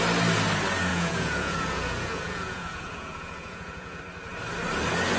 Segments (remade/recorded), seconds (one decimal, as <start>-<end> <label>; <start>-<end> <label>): 0.0-0.9 recorded; 0.9-4.0 remade; 4.0-5.2 recorded